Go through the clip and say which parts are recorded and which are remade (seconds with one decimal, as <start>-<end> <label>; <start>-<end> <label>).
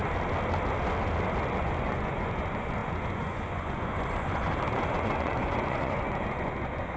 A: 0.0-1.6 recorded; 1.6-7.0 remade